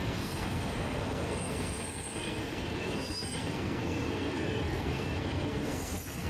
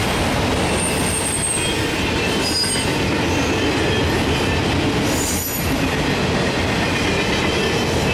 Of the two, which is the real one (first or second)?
second